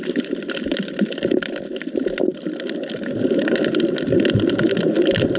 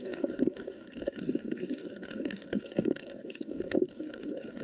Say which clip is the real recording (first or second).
first